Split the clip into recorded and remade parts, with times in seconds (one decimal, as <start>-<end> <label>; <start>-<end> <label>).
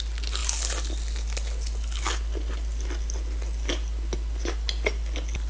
0.0-5.5 recorded